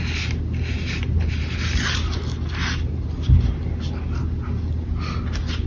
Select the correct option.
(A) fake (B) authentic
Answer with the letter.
B